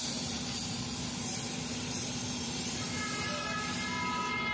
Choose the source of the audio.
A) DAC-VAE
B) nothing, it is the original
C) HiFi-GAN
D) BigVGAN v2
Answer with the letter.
B